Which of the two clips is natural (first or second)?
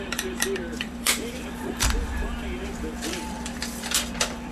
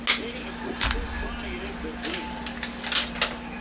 second